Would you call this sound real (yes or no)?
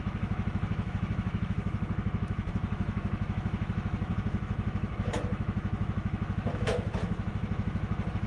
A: no